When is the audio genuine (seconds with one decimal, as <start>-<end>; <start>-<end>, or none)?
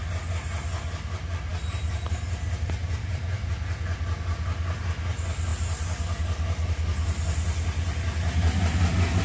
0.0-2.8; 3.5-9.2